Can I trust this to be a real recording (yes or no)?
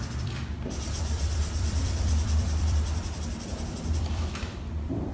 no